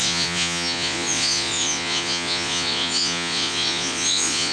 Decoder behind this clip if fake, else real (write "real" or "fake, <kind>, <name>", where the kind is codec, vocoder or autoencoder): fake, vocoder, Vocos